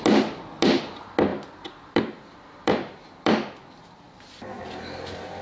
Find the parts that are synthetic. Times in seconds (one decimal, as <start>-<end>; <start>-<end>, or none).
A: 1.3-4.4